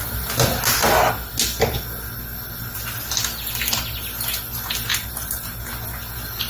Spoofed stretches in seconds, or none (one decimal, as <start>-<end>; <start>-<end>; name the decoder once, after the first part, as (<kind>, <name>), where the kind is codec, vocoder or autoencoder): 4.9-5.6 (vocoder, BigVGAN v2)